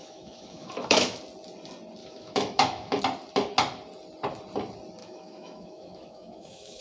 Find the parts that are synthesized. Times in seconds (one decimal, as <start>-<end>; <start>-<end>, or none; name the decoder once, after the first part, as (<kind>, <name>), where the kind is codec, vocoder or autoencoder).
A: 0.0-1.2 (autoencoder, DAC-VAE); 2.0-3.0; 5.0-6.8